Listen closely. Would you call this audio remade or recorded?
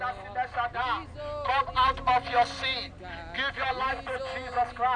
recorded